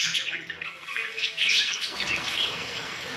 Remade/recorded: remade